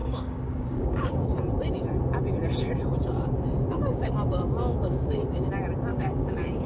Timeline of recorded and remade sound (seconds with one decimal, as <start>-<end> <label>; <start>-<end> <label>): 0.0-1.4 remade; 1.4-3.7 recorded; 3.7-5.5 remade; 5.5-5.9 recorded; 5.9-6.7 remade